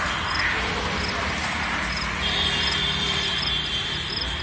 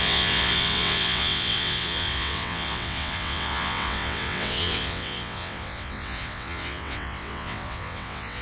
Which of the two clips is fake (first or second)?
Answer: second